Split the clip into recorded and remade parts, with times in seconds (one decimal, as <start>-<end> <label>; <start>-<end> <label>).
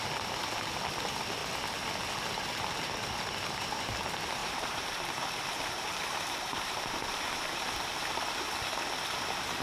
0.0-4.4 recorded; 4.4-8.5 remade; 8.5-9.6 recorded